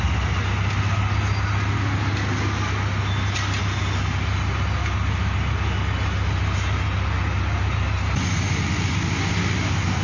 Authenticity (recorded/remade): recorded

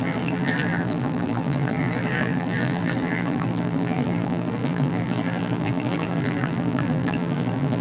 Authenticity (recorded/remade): remade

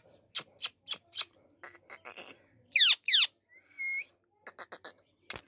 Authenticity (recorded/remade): recorded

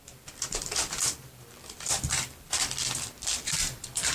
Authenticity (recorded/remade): remade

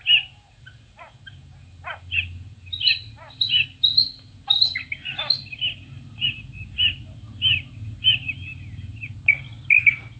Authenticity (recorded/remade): recorded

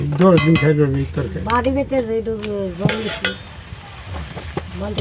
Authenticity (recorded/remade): recorded